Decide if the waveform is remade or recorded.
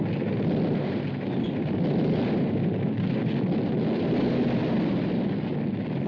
recorded